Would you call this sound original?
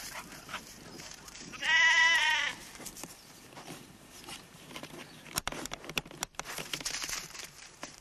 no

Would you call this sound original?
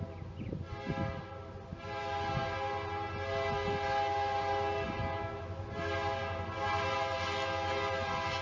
yes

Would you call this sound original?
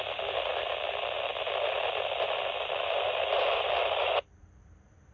no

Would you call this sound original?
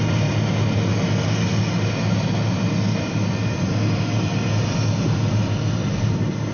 yes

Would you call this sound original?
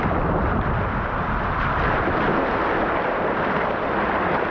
yes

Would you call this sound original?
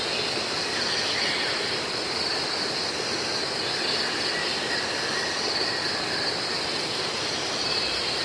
yes